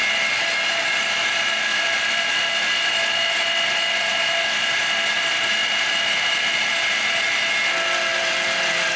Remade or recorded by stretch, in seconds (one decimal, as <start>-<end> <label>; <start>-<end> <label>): 0.0-1.7 recorded; 1.7-2.3 remade; 2.3-8.1 recorded; 8.1-9.0 remade